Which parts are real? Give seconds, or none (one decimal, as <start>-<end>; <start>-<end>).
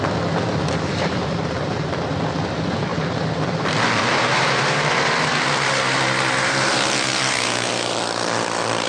0.0-0.9; 1.4-2.9; 8.0-8.9